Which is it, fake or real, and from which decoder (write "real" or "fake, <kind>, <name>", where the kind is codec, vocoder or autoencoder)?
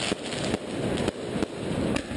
real